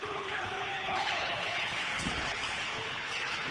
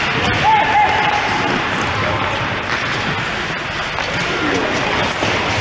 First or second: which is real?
second